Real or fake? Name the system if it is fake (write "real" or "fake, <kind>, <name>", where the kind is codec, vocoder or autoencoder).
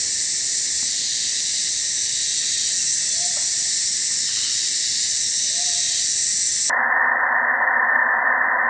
real